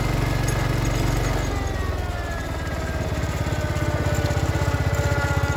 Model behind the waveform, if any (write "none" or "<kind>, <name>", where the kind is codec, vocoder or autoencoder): none